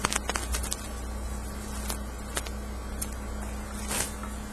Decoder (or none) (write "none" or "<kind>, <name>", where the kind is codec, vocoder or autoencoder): none